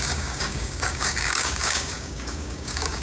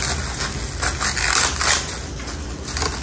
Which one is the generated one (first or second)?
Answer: first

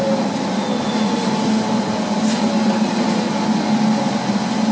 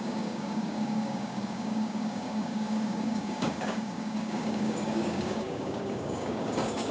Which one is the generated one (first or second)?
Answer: second